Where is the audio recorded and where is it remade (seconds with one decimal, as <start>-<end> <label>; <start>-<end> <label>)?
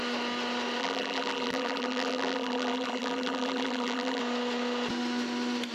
0.0-0.8 recorded; 0.8-4.2 remade; 4.2-5.7 recorded